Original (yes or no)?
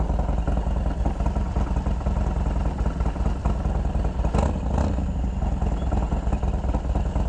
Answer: yes